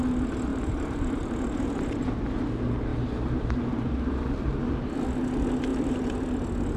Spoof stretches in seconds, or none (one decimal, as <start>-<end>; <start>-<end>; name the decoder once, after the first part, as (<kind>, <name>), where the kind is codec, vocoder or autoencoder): 0.5-1.3 (vocoder, BigVGAN v2); 2.9-4.1; 5.7-6.3